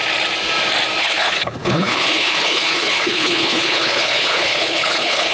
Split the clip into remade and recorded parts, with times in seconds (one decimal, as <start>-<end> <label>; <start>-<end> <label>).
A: 0.0-1.0 recorded; 1.0-5.3 remade